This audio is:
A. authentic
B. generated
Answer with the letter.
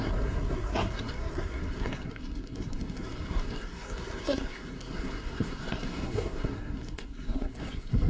B